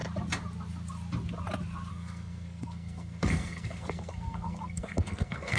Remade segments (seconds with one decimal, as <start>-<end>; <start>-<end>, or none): 1.9-5.6